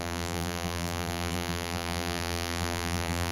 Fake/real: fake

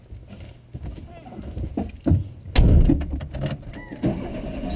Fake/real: real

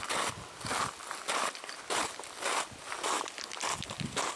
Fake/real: real